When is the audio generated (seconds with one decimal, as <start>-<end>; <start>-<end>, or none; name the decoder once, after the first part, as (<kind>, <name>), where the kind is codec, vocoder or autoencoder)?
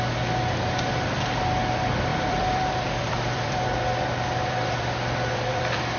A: 2.1-6.0 (vocoder, BigVGAN v2)